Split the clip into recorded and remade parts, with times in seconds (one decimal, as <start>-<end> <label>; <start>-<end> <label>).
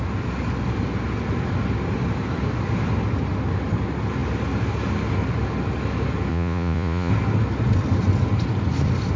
0.0-6.3 recorded; 6.3-7.1 remade; 7.1-9.2 recorded